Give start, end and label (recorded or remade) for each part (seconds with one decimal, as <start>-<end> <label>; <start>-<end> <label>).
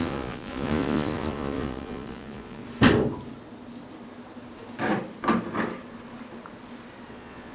0.0-2.6 remade; 2.6-7.1 recorded; 7.1-7.5 remade